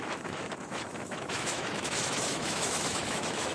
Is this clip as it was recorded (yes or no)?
no